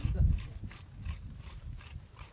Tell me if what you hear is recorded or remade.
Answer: recorded